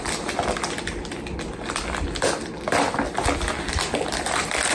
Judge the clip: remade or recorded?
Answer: recorded